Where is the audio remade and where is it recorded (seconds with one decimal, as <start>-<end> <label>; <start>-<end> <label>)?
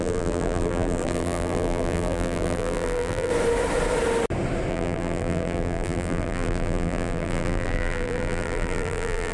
0.0-3.3 remade; 3.3-4.7 recorded; 4.7-9.3 remade